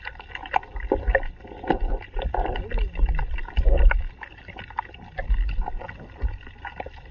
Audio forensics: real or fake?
real